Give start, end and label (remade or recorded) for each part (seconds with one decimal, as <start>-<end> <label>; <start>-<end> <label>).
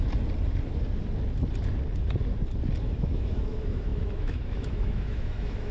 0.0-2.8 recorded; 2.8-5.7 remade